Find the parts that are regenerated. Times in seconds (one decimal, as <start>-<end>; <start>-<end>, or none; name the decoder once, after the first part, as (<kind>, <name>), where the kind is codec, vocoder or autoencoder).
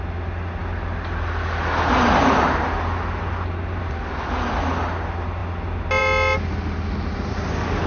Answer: none